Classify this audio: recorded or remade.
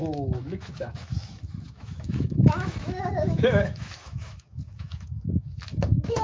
remade